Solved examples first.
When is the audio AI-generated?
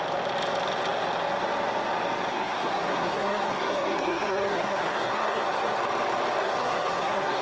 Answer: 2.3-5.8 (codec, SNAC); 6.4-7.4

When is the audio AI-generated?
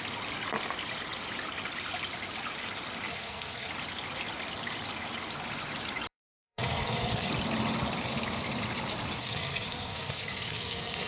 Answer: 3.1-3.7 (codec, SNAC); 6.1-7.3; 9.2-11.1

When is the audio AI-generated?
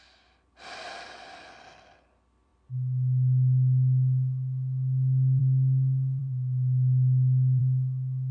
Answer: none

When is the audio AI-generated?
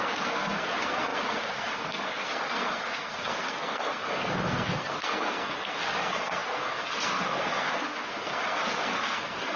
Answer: 0.0-9.6 (codec, SNAC)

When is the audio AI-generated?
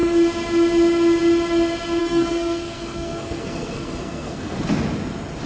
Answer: 2.0-4.6 (codec, SNAC)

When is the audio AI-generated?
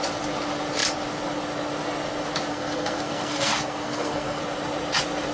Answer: 2.5-4.4 (codec, SNAC)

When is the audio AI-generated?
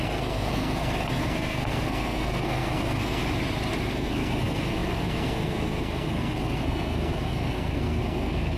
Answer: 0.0-3.2 (codec, SNAC); 3.9-8.6